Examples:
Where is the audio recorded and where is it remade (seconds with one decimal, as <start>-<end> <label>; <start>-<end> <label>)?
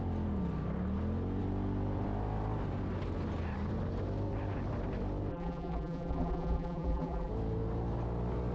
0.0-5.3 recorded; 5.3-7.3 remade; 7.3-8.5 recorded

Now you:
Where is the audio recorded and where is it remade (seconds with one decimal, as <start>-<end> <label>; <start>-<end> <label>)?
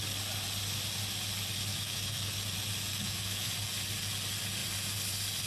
0.0-1.7 recorded; 1.7-2.3 remade; 2.3-2.9 recorded; 2.9-3.5 remade; 3.5-5.5 recorded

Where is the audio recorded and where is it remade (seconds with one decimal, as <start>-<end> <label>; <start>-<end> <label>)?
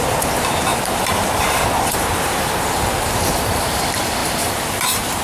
0.0-0.7 recorded; 0.7-3.8 remade; 3.8-4.2 recorded; 4.2-5.2 remade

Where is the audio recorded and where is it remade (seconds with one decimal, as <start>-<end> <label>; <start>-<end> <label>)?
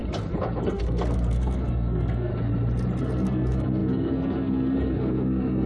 0.0-0.6 recorded; 0.6-2.3 remade; 2.3-3.0 recorded; 3.0-5.7 remade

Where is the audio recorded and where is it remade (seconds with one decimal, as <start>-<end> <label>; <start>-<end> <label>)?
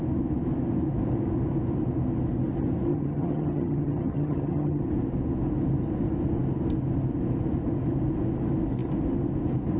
0.0-2.9 recorded; 2.9-4.8 remade; 4.8-9.8 recorded